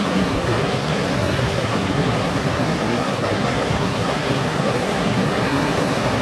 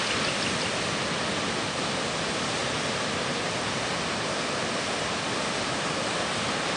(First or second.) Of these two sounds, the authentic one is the second